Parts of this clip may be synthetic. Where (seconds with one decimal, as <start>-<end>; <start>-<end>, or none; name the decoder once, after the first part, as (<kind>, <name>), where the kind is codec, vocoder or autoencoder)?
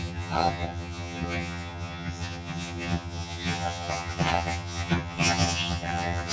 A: 0.0-6.3 (vocoder, HiFi-GAN)